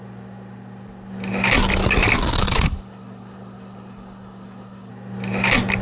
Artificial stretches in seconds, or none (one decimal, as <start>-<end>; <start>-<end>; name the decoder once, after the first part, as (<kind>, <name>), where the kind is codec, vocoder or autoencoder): 2.4-4.9 (codec, HILCodec)